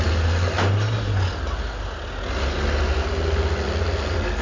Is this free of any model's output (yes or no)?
yes